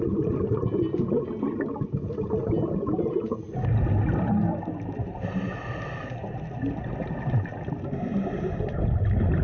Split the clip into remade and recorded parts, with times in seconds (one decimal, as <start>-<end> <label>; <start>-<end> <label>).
0.0-9.4 recorded